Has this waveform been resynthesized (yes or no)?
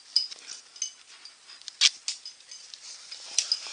no